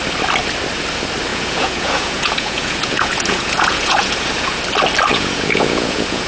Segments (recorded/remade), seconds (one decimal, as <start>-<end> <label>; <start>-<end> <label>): 0.0-1.3 recorded; 1.3-4.6 remade; 4.6-5.1 recorded; 5.1-6.3 remade